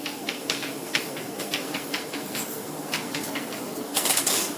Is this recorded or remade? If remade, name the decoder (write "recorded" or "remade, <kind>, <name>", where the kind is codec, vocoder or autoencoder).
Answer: remade, codec, SNAC